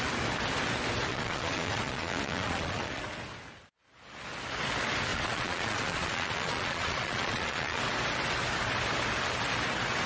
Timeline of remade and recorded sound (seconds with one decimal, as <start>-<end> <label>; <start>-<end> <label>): 0.0-1.1 recorded; 1.1-3.0 remade; 3.0-5.1 recorded; 5.1-7.8 remade; 7.8-10.1 recorded

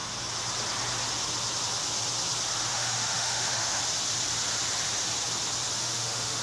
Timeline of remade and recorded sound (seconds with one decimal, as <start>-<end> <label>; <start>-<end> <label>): 0.0-2.7 recorded; 2.7-3.8 remade; 3.8-5.8 recorded; 5.8-6.4 remade

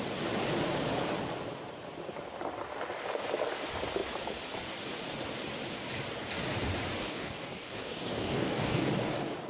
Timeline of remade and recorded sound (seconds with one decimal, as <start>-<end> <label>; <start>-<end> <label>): 0.0-7.0 recorded; 7.0-8.9 remade; 8.9-9.5 recorded